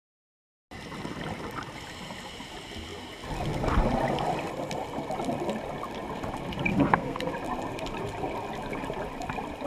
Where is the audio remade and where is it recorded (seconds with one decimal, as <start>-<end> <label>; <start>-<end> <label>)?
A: 0.0-6.7 recorded; 6.7-7.3 remade; 7.3-9.7 recorded